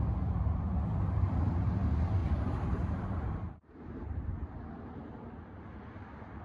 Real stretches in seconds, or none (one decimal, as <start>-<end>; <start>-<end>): 0.0-2.2; 4.2-6.4